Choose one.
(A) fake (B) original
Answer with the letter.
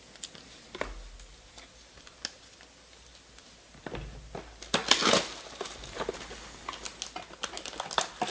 B